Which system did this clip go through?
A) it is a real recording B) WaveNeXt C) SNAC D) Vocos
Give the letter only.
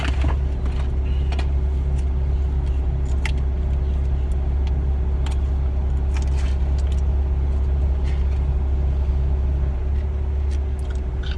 A